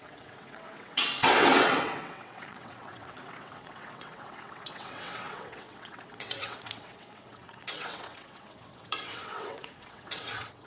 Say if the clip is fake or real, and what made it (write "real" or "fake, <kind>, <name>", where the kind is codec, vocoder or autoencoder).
fake, vocoder, WaveNeXt